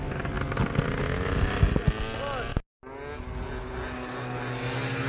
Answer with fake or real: real